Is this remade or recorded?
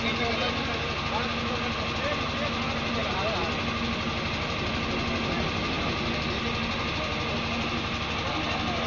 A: recorded